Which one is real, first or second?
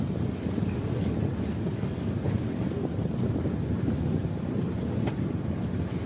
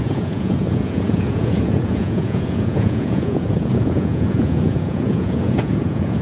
first